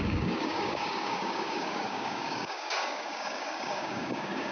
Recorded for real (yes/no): no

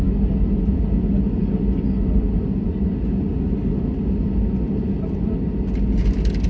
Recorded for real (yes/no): yes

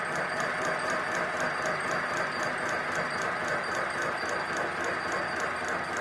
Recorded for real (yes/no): yes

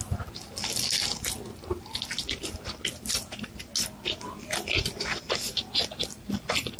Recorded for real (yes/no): yes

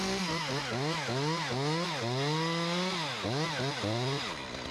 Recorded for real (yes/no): yes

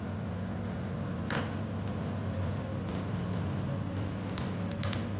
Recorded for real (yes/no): yes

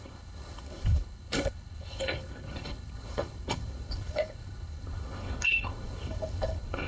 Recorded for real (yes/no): no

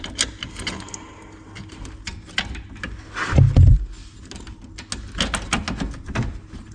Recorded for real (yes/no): yes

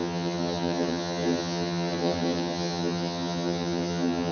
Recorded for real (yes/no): no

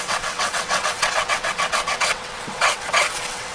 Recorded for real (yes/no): no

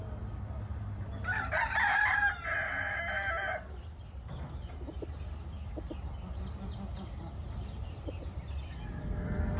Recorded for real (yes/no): yes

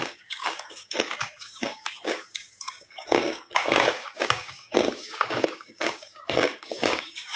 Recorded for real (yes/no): no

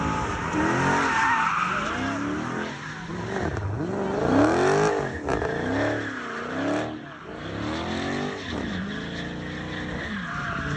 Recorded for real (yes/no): yes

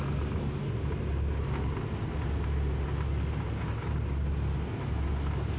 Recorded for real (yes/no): yes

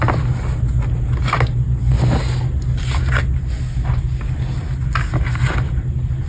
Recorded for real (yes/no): yes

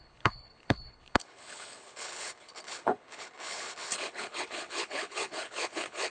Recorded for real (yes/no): no